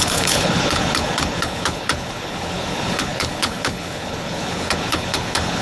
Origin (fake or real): fake